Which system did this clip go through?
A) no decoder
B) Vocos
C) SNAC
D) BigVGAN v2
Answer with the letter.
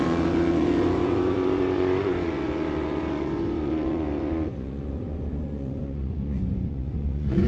B